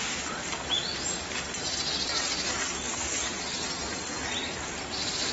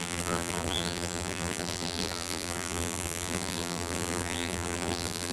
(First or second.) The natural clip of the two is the first